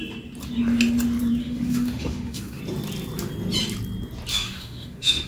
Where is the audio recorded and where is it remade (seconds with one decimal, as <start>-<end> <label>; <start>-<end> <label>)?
0.0-1.4 recorded; 1.4-2.6 remade; 2.6-4.3 recorded; 4.3-5.3 remade